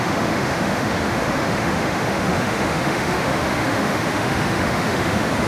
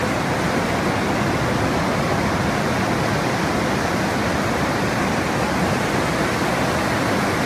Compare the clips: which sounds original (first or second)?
second